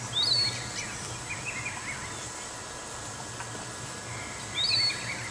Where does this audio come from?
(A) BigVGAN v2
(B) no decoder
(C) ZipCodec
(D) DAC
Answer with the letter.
B